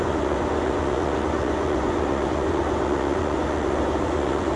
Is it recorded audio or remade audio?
remade